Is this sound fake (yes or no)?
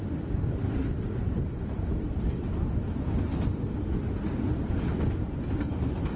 no